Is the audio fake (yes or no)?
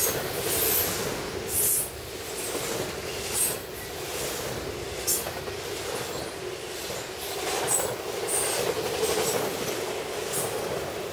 no